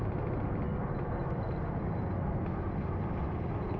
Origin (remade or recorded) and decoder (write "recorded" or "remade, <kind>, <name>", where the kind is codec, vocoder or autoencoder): recorded